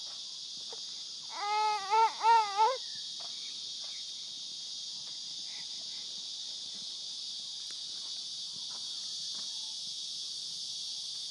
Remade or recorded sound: recorded